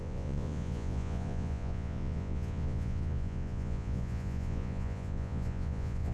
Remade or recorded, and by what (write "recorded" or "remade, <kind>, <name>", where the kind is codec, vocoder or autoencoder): remade, vocoder, Vocos